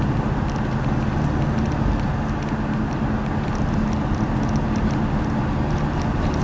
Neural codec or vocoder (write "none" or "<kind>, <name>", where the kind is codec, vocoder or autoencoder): none